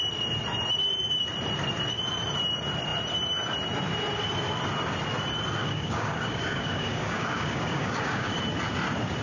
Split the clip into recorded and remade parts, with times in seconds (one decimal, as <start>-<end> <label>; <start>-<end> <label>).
0.0-5.6 recorded; 5.6-8.4 remade; 8.4-9.2 recorded